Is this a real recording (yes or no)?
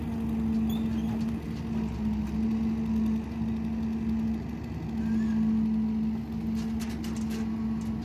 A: yes